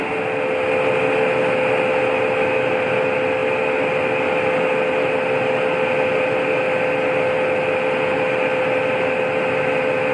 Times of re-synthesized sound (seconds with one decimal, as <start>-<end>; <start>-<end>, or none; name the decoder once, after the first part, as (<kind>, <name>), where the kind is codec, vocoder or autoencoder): none